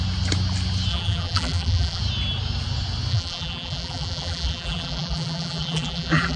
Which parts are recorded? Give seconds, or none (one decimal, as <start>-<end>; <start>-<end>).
0.0-0.9; 2.0-3.1